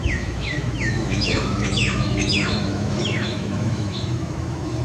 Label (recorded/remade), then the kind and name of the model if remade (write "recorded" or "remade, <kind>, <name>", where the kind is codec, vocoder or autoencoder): remade, autoencoder, DAC-VAE